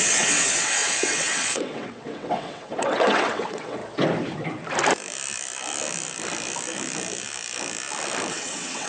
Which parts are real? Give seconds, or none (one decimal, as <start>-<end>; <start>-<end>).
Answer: 3.8-8.3